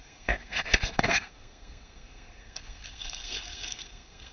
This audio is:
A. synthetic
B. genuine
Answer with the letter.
A